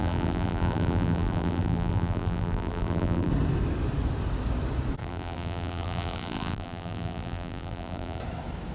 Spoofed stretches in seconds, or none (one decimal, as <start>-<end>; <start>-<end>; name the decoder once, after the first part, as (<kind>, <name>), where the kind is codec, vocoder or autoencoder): 0.0-3.3 (vocoder, BigVGAN v2); 5.0-8.2